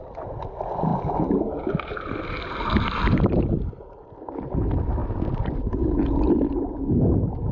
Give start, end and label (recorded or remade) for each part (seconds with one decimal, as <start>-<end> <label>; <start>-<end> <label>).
0.0-7.5 recorded